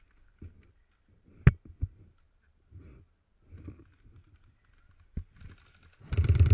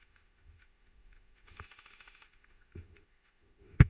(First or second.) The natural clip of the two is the first